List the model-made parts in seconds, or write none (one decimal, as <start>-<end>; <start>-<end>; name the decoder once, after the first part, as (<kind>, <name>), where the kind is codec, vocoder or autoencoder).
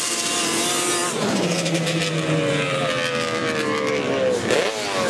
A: none